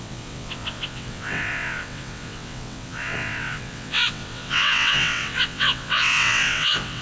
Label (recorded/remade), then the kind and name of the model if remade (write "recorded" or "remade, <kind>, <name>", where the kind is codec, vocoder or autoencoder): remade, vocoder, WaveNeXt